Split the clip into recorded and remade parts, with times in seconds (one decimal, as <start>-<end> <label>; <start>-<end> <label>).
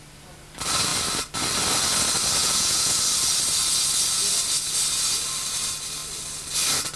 0.0-2.4 recorded; 2.4-3.0 remade; 3.0-7.0 recorded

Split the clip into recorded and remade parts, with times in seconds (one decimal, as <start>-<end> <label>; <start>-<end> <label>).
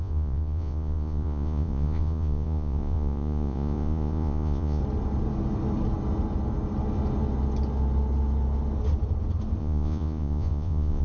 0.0-4.8 remade; 4.8-9.6 recorded; 9.6-11.0 remade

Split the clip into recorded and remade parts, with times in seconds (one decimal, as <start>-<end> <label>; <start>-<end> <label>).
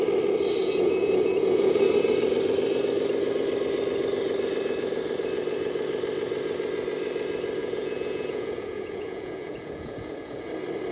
0.0-0.6 recorded; 0.6-1.8 remade; 1.8-7.6 recorded; 7.6-10.5 remade; 10.5-10.9 recorded